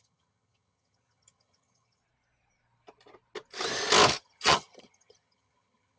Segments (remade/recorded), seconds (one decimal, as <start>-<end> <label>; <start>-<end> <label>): 0.0-2.0 remade; 2.0-4.2 recorded; 4.2-6.0 remade